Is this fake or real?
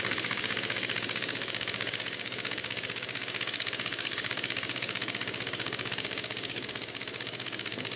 fake